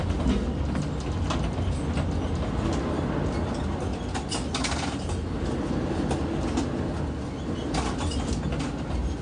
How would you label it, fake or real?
real